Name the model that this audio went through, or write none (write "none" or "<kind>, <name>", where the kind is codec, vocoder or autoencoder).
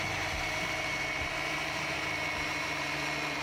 vocoder, BigVGAN v2